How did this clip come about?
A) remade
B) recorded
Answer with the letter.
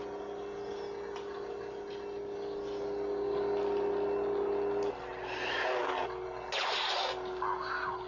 B